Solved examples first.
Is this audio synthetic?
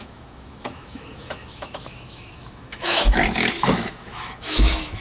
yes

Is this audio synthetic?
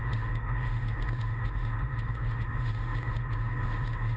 yes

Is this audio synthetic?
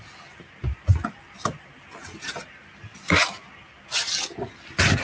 no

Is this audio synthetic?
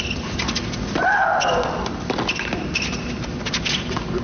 no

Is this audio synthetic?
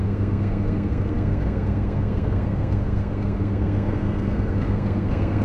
yes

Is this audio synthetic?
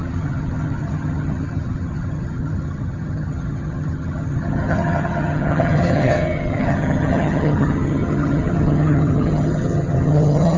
yes